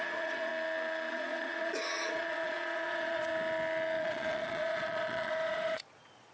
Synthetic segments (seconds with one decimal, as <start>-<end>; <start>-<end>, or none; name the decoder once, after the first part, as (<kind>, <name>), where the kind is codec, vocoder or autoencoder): 0.0-0.5 (vocoder, Vocos); 1.1-3.3; 4.0-6.3

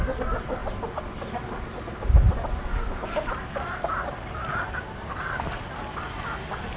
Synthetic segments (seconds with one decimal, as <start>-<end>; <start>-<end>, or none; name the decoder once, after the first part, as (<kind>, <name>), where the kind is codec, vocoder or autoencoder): none

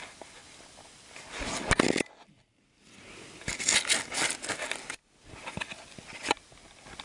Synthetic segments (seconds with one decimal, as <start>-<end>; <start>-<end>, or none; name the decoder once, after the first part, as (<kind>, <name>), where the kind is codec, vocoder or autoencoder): none